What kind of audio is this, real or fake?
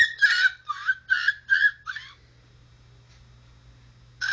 real